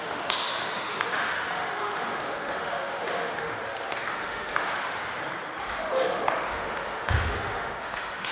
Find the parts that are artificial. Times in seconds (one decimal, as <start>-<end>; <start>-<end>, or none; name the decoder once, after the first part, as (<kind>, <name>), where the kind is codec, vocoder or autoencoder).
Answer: 0.0-3.5 (autoencoder, DAC-VAE); 4.1-5.0; 5.6-8.3